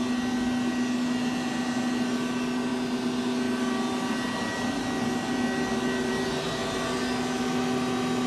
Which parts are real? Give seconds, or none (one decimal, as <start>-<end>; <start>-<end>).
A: 0.0-8.3